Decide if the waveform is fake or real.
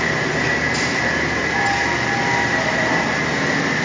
fake